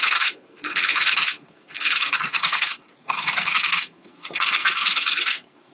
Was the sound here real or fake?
fake